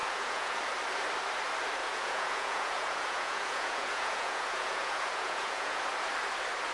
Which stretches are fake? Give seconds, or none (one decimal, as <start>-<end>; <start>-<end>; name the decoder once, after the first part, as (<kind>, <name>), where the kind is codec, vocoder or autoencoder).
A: 0.0-0.6 (vocoder, Vocos); 1.8-5.8